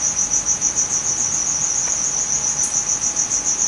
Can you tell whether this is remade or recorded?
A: recorded